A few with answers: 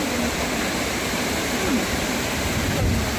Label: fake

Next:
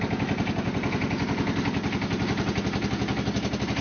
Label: real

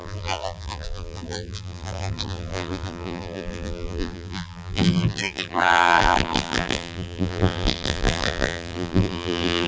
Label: fake